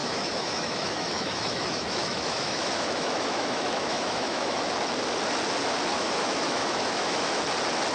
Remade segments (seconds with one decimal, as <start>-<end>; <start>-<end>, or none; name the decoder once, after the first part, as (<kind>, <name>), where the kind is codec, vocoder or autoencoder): 0.0-4.7 (autoencoder, DAC-VAE); 5.9-7.4